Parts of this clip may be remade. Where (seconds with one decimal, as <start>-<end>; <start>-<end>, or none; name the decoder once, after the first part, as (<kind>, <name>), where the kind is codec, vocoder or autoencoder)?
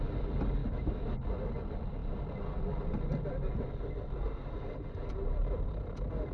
0.6-1.1 (autoencoder, DAC-VAE)